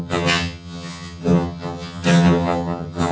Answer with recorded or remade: remade